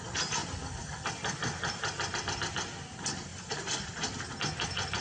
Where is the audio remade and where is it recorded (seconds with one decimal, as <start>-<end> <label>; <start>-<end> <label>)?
0.0-0.4 recorded; 0.4-1.1 remade; 1.1-5.0 recorded